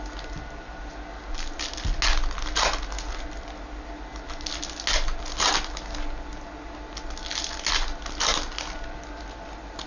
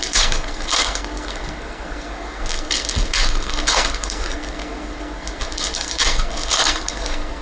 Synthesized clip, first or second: second